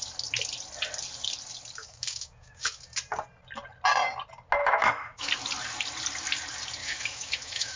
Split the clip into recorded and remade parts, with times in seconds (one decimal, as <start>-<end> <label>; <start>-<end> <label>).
0.0-1.8 recorded; 1.8-2.8 remade; 2.8-4.6 recorded; 4.6-5.3 remade; 5.3-6.8 recorded; 6.8-7.8 remade